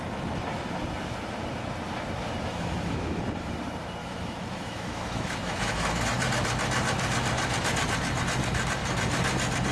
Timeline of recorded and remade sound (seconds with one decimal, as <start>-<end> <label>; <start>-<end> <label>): 0.0-2.5 recorded; 2.5-3.2 remade; 3.2-4.0 recorded; 4.0-6.2 remade; 6.2-9.7 recorded